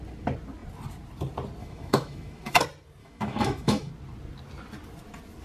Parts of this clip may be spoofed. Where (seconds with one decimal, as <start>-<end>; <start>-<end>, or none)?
1.6-2.6; 3.0-3.9